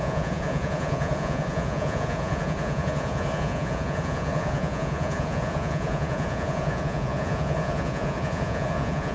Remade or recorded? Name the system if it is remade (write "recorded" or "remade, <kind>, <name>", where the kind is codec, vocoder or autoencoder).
remade, vocoder, Vocos